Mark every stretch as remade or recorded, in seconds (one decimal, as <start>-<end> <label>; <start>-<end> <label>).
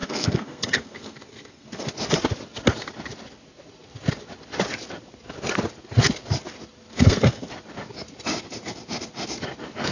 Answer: 0.0-1.9 remade; 1.9-6.9 recorded; 6.9-7.5 remade; 7.5-9.9 recorded